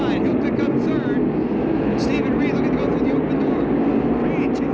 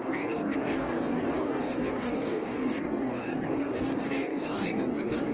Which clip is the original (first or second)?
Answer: first